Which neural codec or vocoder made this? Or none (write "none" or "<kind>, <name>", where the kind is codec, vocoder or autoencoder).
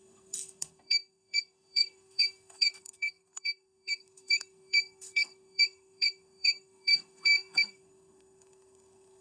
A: codec, SNAC